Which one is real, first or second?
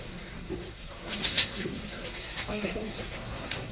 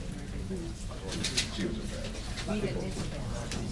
second